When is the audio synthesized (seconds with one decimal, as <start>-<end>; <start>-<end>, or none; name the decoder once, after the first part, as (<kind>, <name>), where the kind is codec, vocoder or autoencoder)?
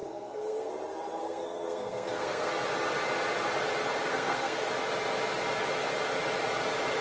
0.0-0.7 (codec, SNAC); 1.2-2.5; 4.1-4.7